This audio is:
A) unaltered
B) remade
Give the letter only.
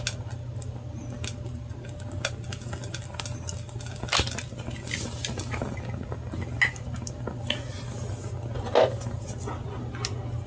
A